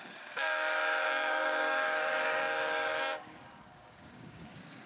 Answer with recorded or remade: remade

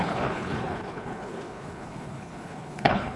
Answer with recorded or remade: remade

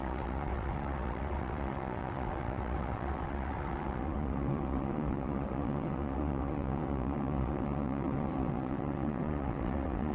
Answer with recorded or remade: remade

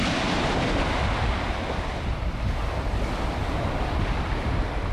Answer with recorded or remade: recorded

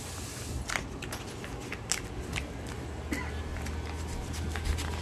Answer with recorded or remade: recorded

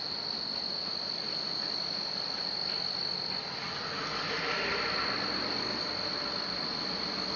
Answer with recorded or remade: recorded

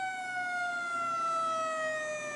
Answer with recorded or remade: recorded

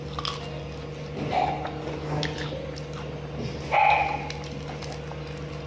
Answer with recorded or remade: recorded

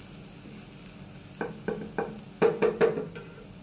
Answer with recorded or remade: recorded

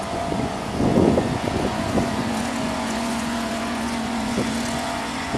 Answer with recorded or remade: remade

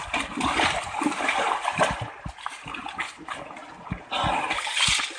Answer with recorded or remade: recorded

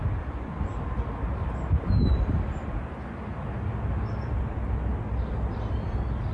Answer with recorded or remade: recorded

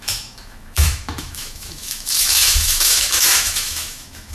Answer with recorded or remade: remade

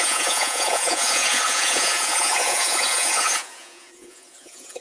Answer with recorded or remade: remade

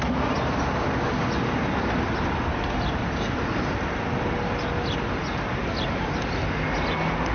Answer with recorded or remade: recorded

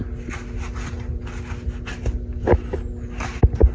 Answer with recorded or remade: recorded